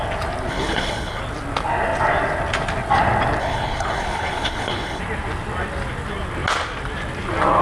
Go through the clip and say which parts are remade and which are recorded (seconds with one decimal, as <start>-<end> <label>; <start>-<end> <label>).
0.0-0.5 recorded; 0.5-1.2 remade; 1.2-3.4 recorded; 3.4-5.0 remade; 5.0-7.6 recorded